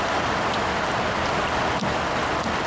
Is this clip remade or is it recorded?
recorded